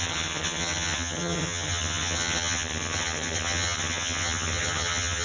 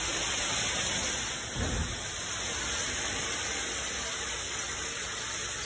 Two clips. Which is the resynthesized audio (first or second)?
first